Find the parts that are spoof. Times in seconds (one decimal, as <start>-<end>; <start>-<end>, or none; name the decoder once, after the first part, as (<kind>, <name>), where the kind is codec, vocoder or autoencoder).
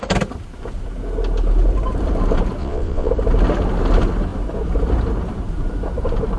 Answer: 2.6-3.1 (vocoder, WaveNeXt)